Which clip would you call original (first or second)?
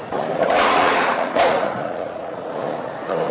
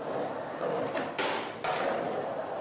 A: second